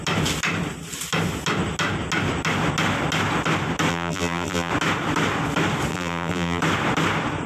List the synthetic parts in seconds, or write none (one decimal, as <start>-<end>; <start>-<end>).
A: 3.9-4.7; 5.9-6.6